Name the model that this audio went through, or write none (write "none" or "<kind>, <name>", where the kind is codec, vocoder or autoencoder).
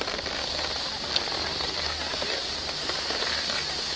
none